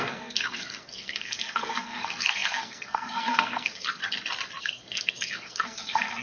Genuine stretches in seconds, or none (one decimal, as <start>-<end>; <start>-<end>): 4.0-4.6